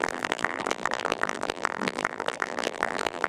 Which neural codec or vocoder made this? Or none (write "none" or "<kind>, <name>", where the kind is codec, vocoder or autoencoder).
vocoder, BigVGAN v2